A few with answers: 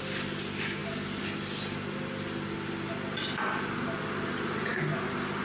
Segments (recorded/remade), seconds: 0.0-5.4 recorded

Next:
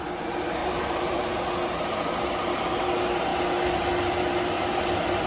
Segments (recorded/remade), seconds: 0.0-0.6 recorded; 0.6-1.4 remade; 1.4-5.3 recorded

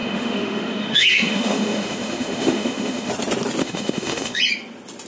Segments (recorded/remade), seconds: 0.0-3.1 remade; 3.1-3.6 recorded; 3.6-4.4 remade; 4.4-5.1 recorded

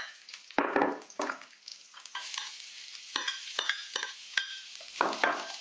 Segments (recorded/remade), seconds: 0.0-5.6 recorded